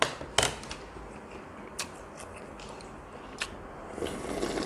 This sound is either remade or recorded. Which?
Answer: recorded